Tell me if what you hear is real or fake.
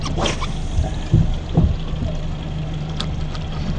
real